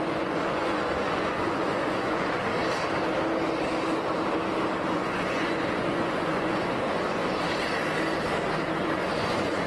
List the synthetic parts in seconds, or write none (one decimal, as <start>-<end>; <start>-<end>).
0.0-2.5; 4.9-7.2; 8.8-9.7